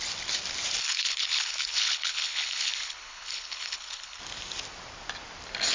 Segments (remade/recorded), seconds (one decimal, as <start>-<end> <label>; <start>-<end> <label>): 0.0-0.8 recorded; 0.8-4.2 remade; 4.2-5.7 recorded